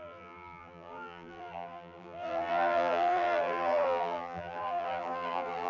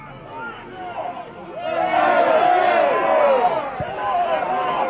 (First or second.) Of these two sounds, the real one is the second